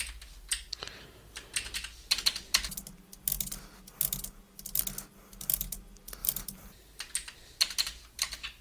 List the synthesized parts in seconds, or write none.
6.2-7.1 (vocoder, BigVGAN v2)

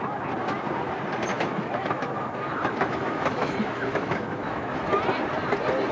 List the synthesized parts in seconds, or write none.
1.3-4.8 (autoencoder, DAC-VAE)